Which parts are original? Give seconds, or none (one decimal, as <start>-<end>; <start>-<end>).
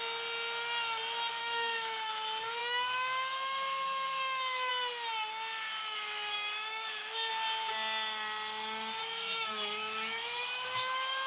0.0-1.4; 2.1-2.6; 4.7-5.8; 7.3-9.0